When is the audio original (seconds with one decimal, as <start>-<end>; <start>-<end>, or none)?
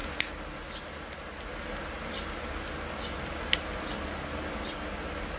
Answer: 0.0-5.4